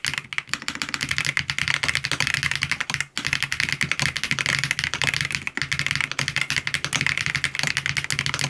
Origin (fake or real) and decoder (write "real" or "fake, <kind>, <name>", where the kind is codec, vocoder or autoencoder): real